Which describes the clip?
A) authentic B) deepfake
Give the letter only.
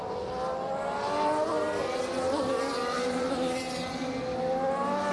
A